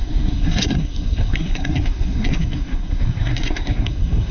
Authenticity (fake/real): fake